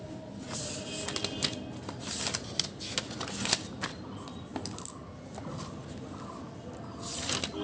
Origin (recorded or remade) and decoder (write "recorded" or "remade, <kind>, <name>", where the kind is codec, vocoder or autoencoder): recorded